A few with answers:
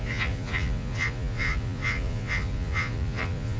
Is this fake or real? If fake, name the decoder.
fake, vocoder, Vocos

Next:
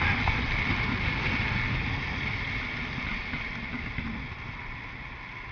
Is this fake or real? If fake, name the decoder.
real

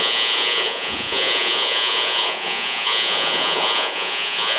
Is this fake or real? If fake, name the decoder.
fake, vocoder, Vocos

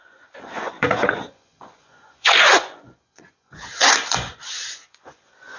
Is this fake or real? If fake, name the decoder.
fake, vocoder, Vocos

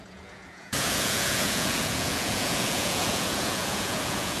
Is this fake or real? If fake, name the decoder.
fake, vocoder, Vocos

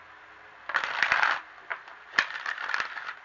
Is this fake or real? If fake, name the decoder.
real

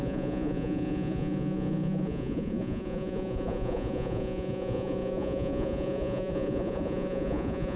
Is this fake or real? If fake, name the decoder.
fake, vocoder, Vocos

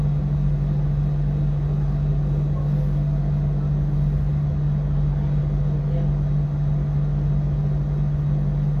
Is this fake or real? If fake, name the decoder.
real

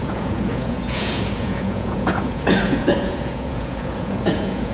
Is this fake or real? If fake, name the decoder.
fake, vocoder, Vocos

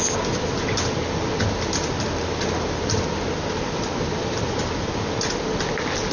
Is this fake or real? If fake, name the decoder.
real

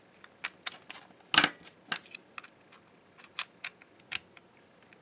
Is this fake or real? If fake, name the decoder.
real